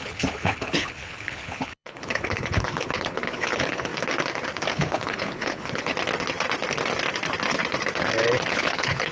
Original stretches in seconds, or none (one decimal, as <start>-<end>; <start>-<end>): 3.9-4.7; 5.9-8.5